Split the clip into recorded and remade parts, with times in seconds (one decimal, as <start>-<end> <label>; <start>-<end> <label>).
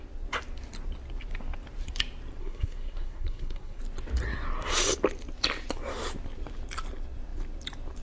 0.0-2.4 recorded; 2.4-3.8 remade; 3.8-8.0 recorded